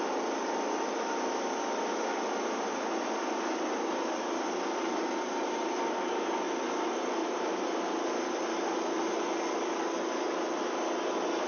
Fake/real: real